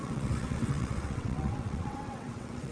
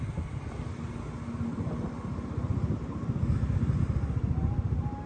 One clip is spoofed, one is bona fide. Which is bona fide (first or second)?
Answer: second